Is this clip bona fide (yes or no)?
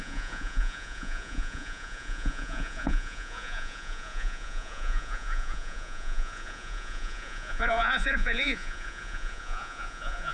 no